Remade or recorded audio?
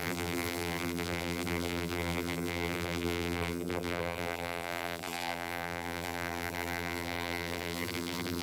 remade